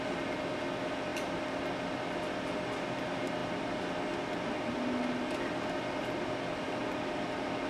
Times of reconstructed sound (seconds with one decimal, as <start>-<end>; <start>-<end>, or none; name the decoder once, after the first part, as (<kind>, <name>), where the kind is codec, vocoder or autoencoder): none